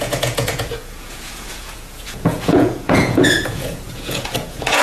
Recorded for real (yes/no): no